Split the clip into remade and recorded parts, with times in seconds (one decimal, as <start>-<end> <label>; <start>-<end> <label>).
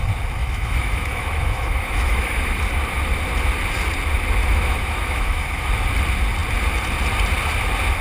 0.0-0.4 recorded; 0.4-2.6 remade; 2.6-4.4 recorded; 4.4-5.7 remade; 5.7-8.0 recorded